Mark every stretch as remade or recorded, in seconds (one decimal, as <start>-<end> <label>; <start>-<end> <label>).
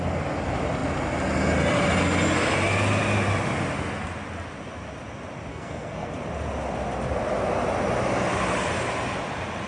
0.0-5.5 recorded; 5.5-6.1 remade; 6.1-9.7 recorded